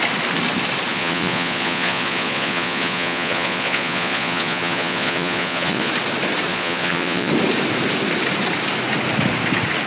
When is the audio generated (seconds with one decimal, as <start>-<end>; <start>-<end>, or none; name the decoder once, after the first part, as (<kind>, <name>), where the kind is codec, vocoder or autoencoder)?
0.9-5.9 (vocoder, Vocos); 6.5-7.3